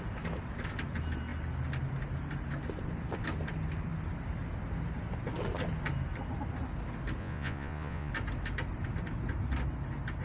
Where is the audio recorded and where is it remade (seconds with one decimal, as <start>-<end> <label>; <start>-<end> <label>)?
0.0-7.2 recorded; 7.2-8.1 remade; 8.1-10.2 recorded